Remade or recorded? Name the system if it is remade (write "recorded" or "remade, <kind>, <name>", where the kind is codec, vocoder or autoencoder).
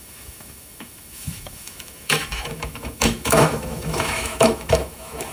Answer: remade, autoencoder, DAC-VAE